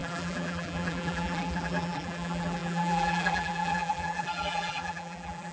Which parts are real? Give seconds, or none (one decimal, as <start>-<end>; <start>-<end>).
none